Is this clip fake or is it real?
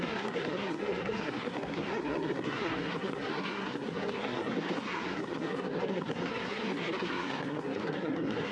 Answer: fake